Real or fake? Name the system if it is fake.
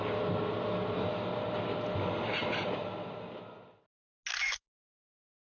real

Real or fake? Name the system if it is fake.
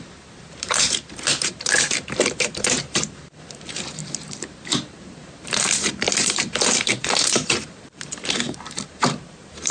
fake, vocoder, BigVGAN v2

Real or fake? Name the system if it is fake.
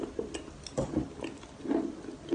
real